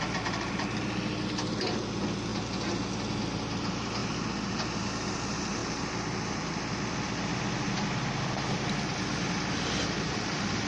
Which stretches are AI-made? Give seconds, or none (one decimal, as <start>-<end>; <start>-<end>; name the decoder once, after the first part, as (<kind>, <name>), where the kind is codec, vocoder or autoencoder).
none